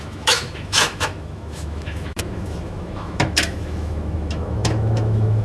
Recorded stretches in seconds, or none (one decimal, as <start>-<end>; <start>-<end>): none